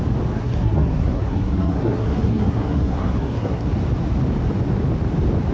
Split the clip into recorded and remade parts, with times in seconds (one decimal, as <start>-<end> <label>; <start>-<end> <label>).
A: 0.0-0.4 recorded; 0.4-3.7 remade; 3.7-5.5 recorded

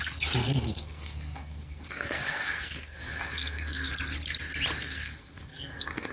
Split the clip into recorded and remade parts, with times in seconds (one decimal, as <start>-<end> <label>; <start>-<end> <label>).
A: 0.0-0.4 recorded; 0.4-3.9 remade; 3.9-4.8 recorded; 4.8-6.1 remade

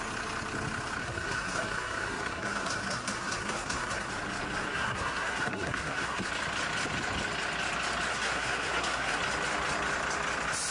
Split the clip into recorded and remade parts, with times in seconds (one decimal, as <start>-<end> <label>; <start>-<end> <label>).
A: 0.0-1.0 recorded; 1.0-4.1 remade; 4.1-4.7 recorded; 4.7-6.3 remade; 6.3-8.1 recorded; 8.1-9.2 remade; 9.2-10.7 recorded

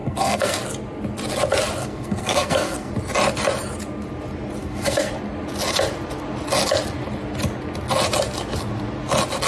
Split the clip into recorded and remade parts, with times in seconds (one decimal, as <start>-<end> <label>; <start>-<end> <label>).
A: 0.0-0.6 remade; 0.6-1.8 recorded; 1.8-2.9 remade; 2.9-4.6 recorded; 4.6-5.1 remade; 5.1-9.5 recorded

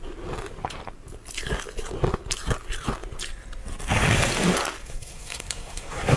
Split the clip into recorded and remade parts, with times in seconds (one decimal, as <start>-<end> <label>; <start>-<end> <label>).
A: 0.0-4.8 recorded; 4.8-6.2 remade

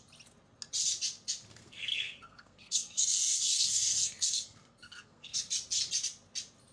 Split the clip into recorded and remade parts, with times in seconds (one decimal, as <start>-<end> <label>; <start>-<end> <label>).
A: 0.0-1.5 recorded; 1.5-5.5 remade; 5.5-6.7 recorded

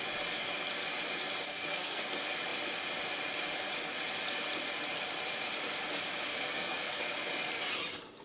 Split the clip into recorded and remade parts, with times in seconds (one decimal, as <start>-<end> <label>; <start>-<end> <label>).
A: 0.0-1.5 recorded; 1.5-2.1 remade; 2.1-6.3 recorded; 6.3-7.0 remade; 7.0-8.2 recorded